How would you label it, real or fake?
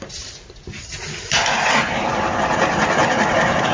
real